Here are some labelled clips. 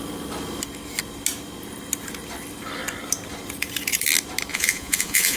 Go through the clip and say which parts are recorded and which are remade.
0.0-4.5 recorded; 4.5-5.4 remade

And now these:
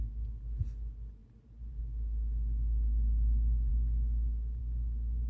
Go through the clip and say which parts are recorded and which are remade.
0.0-1.2 recorded; 1.2-1.8 remade; 1.8-5.3 recorded

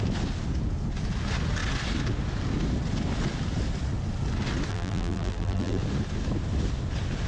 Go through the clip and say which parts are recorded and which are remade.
0.0-4.7 recorded; 4.7-5.8 remade; 5.8-7.3 recorded

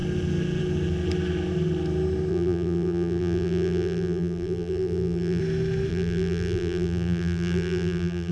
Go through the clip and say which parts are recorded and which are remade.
0.0-2.3 recorded; 2.3-5.4 remade; 5.4-5.9 recorded; 5.9-8.3 remade

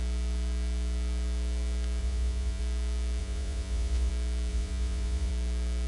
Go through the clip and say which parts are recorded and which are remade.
0.0-2.0 recorded; 2.0-2.6 remade; 2.6-3.2 recorded; 3.2-4.1 remade; 4.1-4.5 recorded; 4.5-5.3 remade; 5.3-5.9 recorded